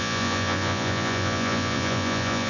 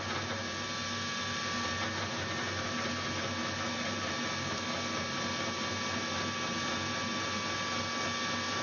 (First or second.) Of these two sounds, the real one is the second